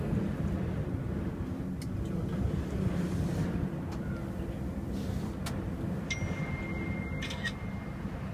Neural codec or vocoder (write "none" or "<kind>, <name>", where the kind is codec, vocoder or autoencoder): none